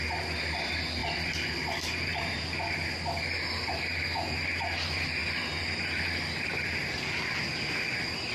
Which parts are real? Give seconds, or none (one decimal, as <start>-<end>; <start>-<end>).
0.0-1.0; 2.7-8.3